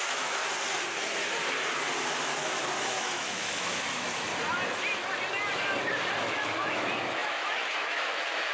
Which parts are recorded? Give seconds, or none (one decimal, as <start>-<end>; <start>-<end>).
0.4-2.2; 4.3-6.2